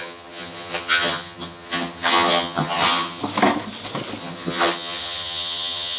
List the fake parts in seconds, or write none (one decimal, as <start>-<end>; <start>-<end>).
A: 0.0-3.2; 4.2-6.0